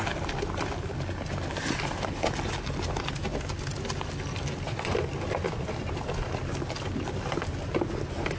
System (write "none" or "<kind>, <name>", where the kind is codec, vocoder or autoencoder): none